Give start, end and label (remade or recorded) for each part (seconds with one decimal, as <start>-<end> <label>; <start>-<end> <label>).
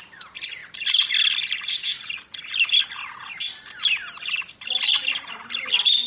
0.0-6.1 recorded